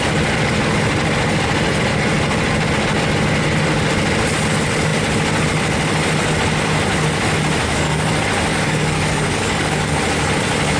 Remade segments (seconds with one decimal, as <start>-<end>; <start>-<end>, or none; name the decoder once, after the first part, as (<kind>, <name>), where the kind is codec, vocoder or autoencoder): 7.6-8.1 (codec, DAC); 8.5-10.0